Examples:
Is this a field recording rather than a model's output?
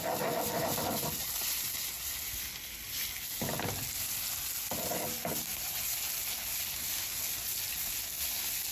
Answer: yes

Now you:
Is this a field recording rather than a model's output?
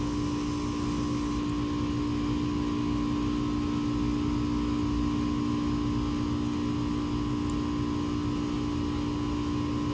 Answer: yes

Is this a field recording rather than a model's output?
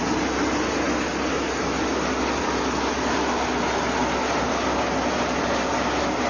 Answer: yes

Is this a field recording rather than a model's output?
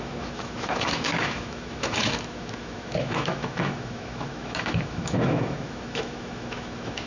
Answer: no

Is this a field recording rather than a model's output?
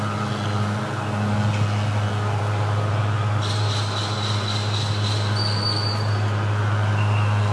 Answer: yes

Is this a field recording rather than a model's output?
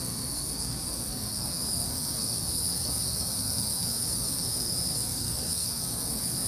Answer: no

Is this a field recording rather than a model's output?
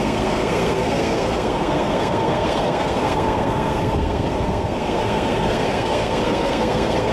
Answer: no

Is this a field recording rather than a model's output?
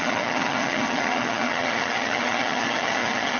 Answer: no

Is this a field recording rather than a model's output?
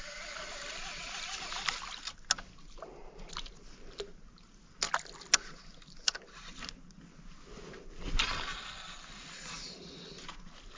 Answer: yes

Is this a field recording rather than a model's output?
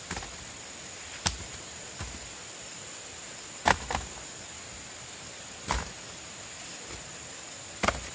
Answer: yes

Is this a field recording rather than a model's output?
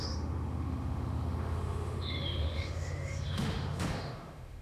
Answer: no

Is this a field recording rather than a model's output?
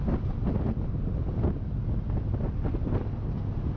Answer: yes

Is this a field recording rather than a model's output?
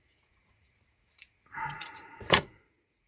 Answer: no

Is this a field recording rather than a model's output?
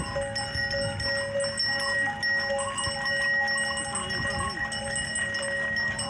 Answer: yes